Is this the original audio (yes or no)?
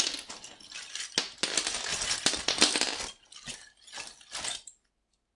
yes